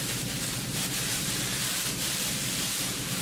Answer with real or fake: fake